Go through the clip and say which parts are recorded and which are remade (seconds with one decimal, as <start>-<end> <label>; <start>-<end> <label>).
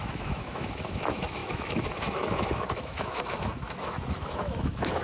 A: 0.0-5.0 remade